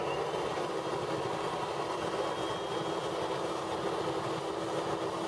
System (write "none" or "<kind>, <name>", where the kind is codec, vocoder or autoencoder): none